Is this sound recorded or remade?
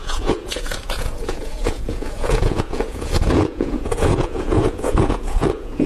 remade